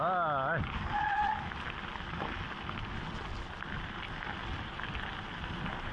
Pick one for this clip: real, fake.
real